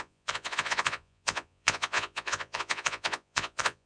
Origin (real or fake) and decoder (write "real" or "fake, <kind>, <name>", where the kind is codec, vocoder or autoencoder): fake, vocoder, Vocos